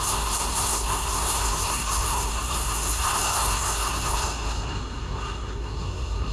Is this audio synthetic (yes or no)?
yes